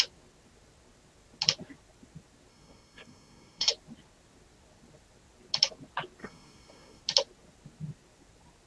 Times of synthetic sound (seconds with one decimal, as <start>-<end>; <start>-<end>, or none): 2.5-3.7; 6.2-7.0